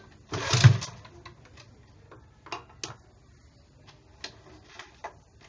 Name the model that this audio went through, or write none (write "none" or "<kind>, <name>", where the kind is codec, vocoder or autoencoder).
none